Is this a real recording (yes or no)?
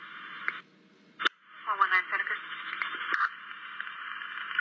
yes